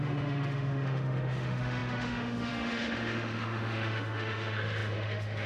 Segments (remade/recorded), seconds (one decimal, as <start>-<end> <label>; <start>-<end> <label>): 0.0-5.5 remade